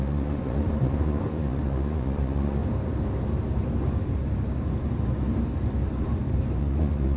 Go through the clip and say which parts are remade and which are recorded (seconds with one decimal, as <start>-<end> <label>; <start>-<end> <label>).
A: 0.0-2.6 remade; 2.6-6.6 recorded; 6.6-7.2 remade